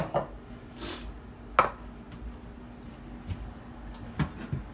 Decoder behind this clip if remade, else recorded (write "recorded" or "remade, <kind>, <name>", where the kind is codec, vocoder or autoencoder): recorded